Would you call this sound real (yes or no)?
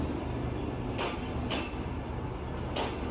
yes